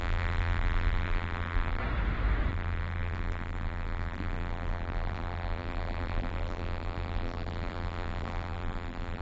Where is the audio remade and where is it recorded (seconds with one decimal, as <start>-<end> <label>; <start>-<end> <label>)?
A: 0.0-1.8 remade; 1.8-2.5 recorded; 2.5-9.2 remade

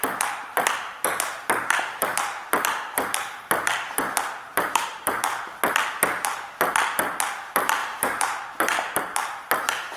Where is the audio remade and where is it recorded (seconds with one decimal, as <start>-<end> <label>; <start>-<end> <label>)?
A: 0.0-4.5 recorded; 4.5-5.4 remade; 5.4-7.8 recorded; 7.8-9.0 remade; 9.0-10.0 recorded